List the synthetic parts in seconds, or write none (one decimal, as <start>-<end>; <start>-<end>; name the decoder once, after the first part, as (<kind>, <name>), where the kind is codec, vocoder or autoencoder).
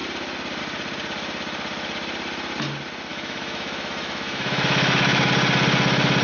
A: 3.1-5.3 (autoencoder, DAC-VAE)